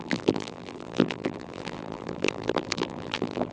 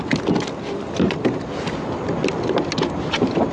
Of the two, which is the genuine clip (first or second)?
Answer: second